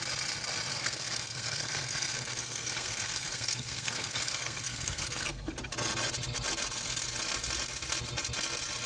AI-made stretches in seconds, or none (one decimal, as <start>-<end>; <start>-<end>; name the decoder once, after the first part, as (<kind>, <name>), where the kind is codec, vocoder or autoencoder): 0.7-5.5 (codec, SNAC)